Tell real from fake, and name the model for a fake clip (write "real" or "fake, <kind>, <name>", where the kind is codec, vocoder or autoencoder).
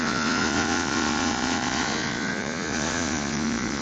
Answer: fake, vocoder, Vocos